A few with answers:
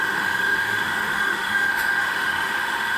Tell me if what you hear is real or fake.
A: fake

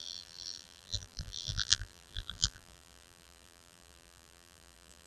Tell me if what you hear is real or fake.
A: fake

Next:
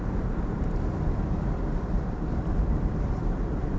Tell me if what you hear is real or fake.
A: fake